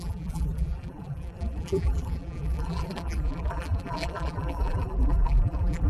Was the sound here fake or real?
fake